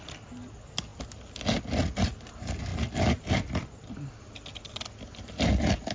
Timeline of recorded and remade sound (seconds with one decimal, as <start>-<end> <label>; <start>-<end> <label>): 0.0-5.9 recorded